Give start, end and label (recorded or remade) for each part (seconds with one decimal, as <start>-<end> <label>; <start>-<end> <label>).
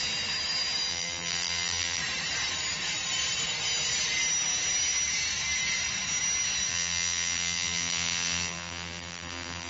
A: 0.0-0.9 recorded; 0.9-2.0 remade; 2.0-6.7 recorded; 6.7-9.7 remade